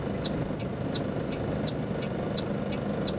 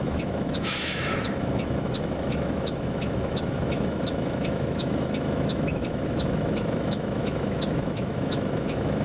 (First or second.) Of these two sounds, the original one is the first